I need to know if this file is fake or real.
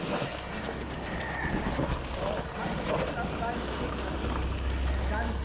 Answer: real